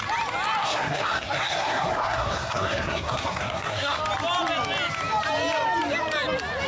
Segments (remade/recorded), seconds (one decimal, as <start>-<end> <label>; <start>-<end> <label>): 0.0-0.6 recorded; 0.6-4.0 remade; 4.0-6.7 recorded